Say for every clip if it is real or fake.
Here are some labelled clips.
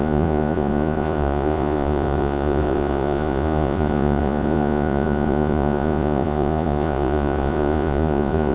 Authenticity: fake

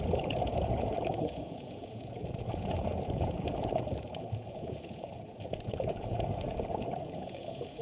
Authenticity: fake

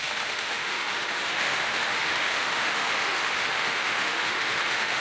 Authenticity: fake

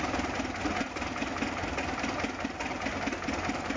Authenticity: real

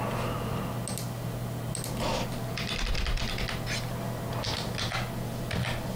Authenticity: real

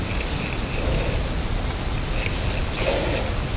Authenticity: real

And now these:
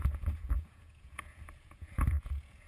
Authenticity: fake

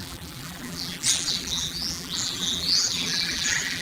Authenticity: fake